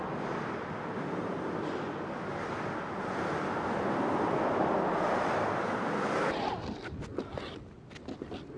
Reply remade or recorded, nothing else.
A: recorded